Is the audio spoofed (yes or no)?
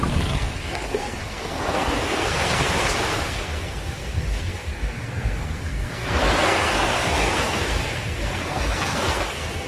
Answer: yes